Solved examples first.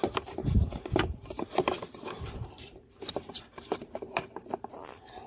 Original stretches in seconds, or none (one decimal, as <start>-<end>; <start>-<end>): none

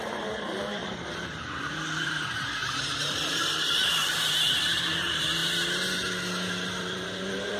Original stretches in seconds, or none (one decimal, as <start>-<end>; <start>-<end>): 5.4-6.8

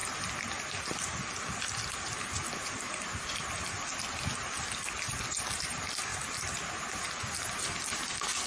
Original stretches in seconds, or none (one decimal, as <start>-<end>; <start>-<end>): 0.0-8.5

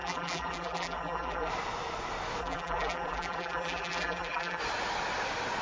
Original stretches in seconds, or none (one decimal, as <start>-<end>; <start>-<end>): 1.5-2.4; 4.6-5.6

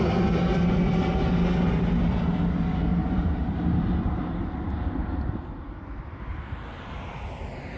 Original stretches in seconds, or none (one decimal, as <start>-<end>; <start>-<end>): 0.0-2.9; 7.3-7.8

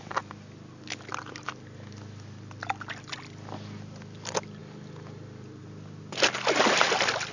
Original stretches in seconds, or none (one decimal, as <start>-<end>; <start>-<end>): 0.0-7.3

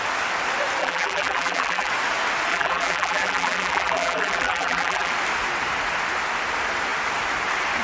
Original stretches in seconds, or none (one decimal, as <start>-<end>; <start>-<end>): 0.0-0.8; 1.9-2.5; 5.1-7.8

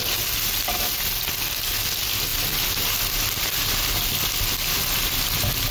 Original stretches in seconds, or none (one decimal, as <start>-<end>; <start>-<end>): 0.0-2.3